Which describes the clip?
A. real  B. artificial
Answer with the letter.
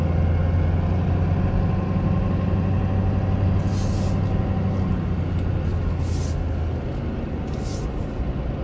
A